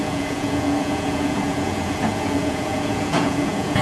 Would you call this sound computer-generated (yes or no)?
yes